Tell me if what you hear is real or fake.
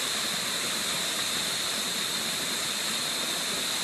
real